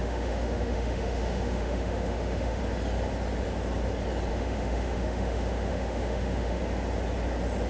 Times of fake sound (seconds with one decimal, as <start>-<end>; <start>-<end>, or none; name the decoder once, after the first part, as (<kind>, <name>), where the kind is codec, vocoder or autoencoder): 0.0-2.6 (autoencoder, DAC-VAE); 4.3-6.6